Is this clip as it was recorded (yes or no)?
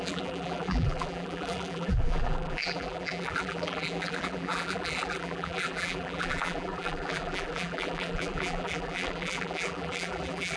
no